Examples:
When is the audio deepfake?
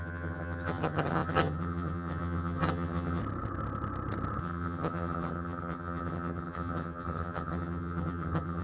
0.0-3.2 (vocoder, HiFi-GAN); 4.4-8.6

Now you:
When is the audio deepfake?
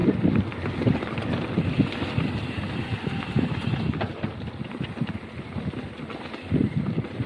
none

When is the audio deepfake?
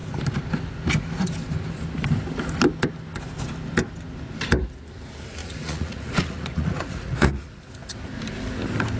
5.4-7.6 (vocoder, Vocos)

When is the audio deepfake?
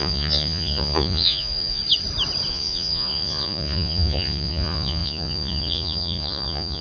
0.0-1.8 (vocoder, Vocos); 2.5-6.8